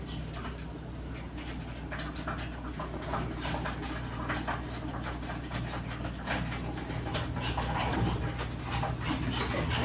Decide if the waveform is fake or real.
real